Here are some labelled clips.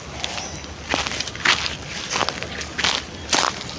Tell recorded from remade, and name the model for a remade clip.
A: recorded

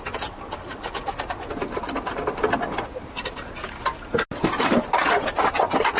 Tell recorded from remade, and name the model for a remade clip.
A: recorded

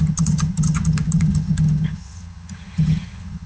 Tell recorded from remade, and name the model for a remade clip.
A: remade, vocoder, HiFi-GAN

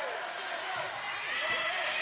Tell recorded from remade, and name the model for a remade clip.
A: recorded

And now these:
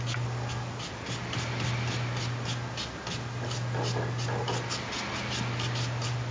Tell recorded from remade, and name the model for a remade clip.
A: recorded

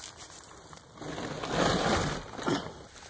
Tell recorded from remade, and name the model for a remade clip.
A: recorded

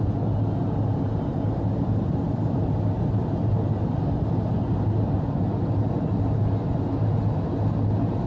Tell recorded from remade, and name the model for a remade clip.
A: recorded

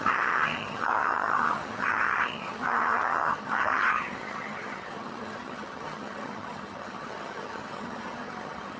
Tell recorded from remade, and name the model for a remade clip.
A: remade, vocoder, HiFi-GAN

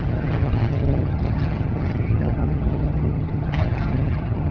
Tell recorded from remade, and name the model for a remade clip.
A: remade, vocoder, HiFi-GAN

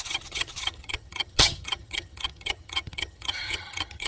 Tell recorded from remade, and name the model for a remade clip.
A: remade, vocoder, HiFi-GAN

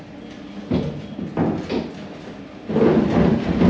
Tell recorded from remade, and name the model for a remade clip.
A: recorded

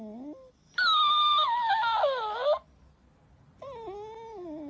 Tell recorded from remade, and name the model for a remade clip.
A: recorded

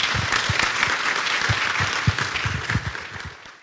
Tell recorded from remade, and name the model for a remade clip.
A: recorded